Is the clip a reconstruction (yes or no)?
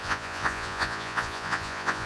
yes